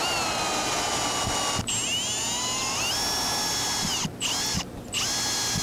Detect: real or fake real